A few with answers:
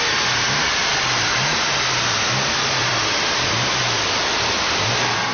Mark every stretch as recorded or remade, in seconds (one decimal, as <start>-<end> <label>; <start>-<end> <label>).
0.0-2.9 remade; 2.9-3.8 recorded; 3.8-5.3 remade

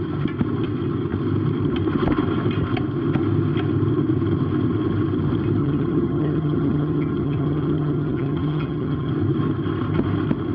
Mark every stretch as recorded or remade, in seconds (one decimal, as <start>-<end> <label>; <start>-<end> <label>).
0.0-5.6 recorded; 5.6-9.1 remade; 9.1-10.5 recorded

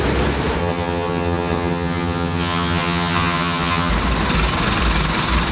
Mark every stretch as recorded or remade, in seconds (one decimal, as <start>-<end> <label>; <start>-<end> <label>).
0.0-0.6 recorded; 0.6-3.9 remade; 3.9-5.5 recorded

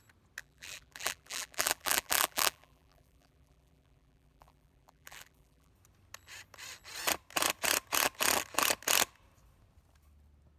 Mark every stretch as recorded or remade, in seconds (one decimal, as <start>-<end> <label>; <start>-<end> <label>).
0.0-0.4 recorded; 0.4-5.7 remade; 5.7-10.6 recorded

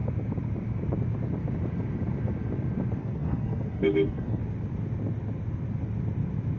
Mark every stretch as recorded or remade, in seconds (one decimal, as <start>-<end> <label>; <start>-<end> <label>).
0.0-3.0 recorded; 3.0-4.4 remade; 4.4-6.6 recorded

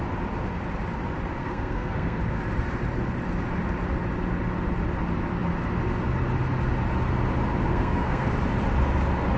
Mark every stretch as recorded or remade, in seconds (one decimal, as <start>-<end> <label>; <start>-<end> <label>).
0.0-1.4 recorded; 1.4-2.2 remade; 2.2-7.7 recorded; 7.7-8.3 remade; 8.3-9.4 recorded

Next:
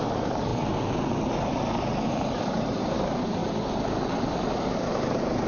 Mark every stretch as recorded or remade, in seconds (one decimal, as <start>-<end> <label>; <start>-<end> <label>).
0.0-0.5 remade; 0.5-2.4 recorded; 2.4-3.4 remade; 3.4-4.2 recorded; 4.2-5.5 remade

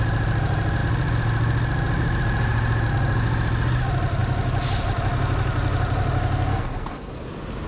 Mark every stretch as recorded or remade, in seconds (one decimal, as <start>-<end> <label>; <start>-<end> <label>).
0.0-6.5 recorded; 6.5-7.1 remade; 7.1-7.7 recorded